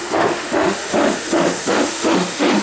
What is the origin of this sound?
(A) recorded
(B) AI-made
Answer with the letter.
B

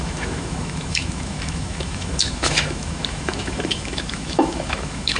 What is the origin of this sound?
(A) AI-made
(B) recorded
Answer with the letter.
A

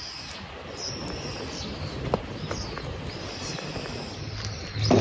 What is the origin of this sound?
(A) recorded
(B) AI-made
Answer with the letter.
A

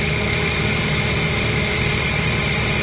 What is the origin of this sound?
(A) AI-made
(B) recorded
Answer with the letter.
A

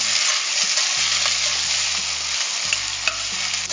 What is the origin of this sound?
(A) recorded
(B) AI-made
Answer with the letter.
A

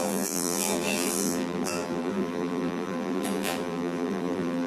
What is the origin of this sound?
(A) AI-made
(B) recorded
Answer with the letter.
A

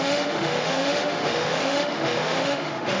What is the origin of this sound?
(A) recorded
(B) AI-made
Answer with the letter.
B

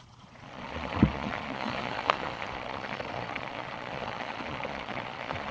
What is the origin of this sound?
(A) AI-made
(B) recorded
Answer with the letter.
A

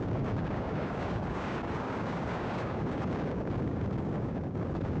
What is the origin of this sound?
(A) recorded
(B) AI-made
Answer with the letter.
B